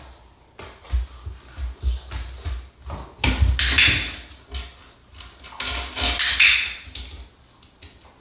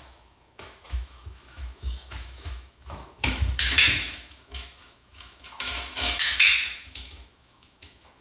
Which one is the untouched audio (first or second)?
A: first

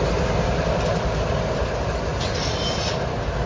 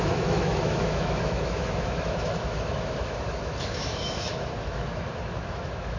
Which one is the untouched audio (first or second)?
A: first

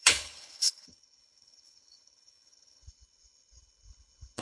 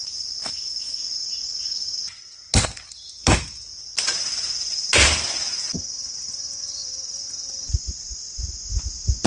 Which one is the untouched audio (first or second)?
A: second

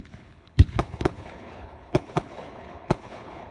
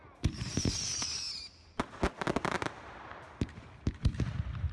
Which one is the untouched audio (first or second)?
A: second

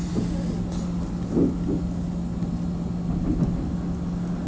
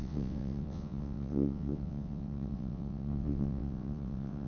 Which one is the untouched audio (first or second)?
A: first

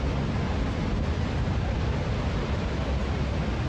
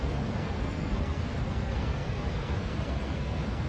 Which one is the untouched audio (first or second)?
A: first